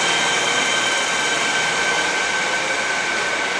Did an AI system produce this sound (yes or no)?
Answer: no